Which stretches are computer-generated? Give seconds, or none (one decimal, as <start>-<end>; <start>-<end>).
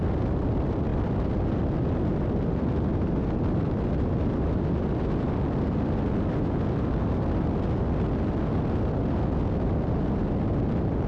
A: none